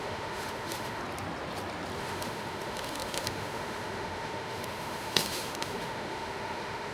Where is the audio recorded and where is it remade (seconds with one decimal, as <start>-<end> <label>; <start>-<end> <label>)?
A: 0.0-1.0 remade; 1.0-2.0 recorded; 2.0-6.9 remade